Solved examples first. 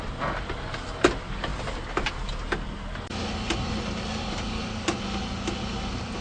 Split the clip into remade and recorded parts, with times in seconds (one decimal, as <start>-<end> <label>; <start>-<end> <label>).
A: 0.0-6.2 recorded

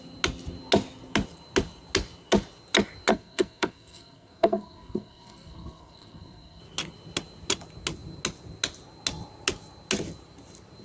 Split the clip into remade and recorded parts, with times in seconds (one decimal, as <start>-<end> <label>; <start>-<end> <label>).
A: 0.0-3.1 recorded; 3.1-6.6 remade; 6.6-10.8 recorded

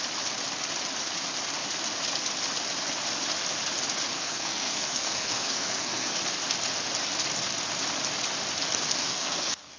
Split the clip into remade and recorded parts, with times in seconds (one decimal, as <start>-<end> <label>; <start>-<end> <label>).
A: 0.0-4.1 recorded; 4.1-6.2 remade; 6.2-9.0 recorded; 9.0-9.8 remade

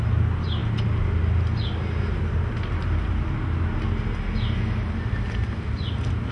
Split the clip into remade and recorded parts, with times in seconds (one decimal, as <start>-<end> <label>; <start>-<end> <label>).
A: 0.0-6.3 recorded

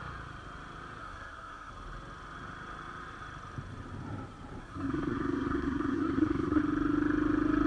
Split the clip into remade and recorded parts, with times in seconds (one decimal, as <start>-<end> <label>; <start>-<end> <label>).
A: 0.0-1.0 recorded; 1.0-1.7 remade; 1.7-4.6 recorded; 4.6-6.6 remade; 6.6-7.7 recorded